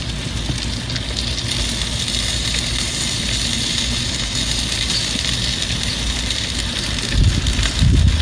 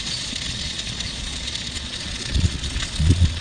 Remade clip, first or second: second